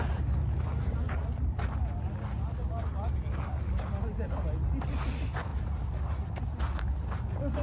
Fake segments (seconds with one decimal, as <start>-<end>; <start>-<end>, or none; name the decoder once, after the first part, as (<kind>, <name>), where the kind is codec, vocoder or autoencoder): none